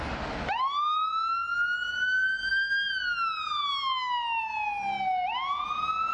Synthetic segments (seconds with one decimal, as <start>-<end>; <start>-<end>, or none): none